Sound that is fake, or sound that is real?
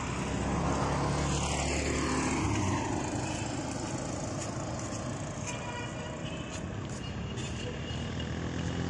real